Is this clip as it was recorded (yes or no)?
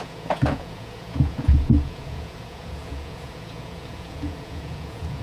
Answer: no